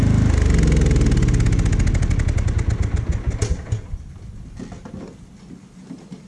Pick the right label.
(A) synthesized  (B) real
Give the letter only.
B